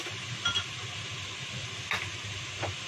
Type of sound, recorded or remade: recorded